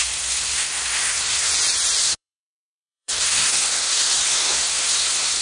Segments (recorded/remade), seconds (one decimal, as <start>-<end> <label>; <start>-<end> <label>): 0.0-1.5 remade; 1.5-2.0 recorded; 2.0-5.4 remade